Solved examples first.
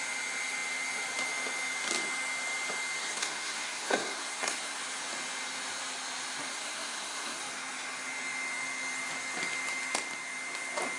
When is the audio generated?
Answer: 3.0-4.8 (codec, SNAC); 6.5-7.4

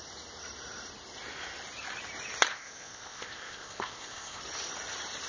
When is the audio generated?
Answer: 2.5-4.4 (codec, ZipCodec)

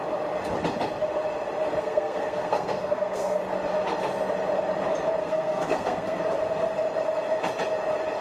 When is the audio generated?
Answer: 1.8-3.4 (codec, SNAC); 5.2-6.2